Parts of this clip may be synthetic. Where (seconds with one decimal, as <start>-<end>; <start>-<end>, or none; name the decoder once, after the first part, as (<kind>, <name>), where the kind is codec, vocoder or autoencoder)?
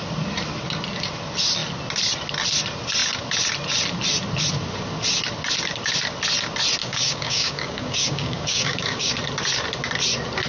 6.8-9.1 (codec, DAC)